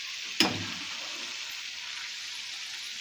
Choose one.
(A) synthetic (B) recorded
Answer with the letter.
B